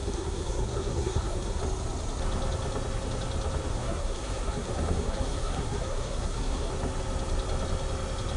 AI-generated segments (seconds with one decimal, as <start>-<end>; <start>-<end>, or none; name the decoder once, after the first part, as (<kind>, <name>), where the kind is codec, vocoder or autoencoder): 0.0-1.6 (codec, SNAC); 3.7-6.7